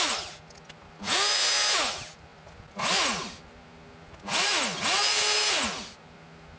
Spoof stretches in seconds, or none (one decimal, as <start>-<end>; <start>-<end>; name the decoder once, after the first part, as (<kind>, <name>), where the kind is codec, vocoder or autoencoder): none